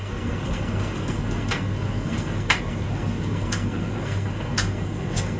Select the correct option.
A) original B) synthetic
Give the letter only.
B